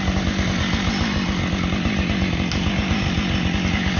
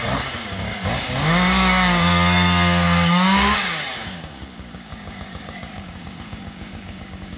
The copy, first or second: second